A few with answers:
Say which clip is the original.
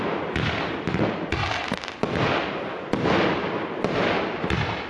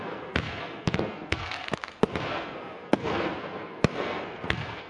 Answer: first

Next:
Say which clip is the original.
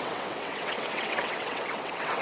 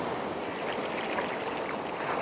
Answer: second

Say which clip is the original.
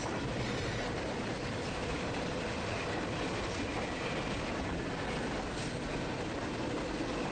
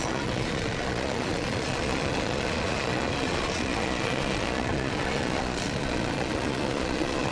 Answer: first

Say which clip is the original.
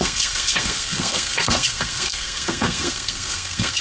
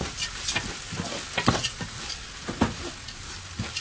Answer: second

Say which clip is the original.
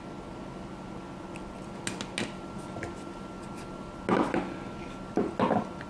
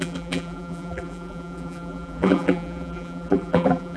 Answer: first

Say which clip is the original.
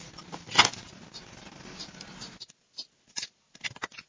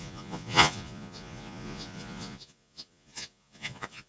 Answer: first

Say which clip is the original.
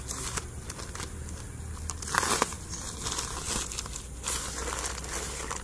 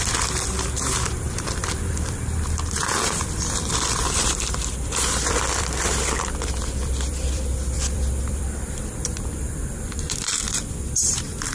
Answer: first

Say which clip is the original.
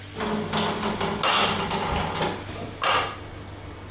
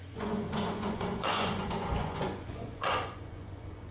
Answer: first